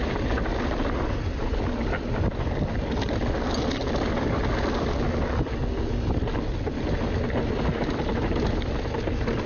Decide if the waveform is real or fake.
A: real